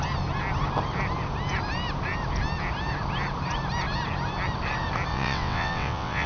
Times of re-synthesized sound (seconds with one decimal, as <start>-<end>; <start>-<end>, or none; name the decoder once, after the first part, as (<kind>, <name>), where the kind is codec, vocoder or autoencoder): 5.1-6.3 (vocoder, WaveNeXt)